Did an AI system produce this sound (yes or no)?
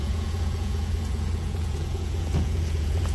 yes